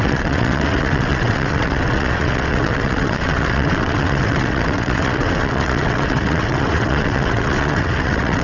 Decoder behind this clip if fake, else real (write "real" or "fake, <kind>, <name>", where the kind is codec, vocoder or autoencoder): fake, vocoder, WaveNeXt